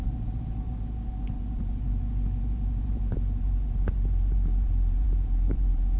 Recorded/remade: remade